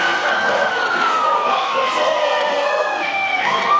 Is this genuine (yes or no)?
no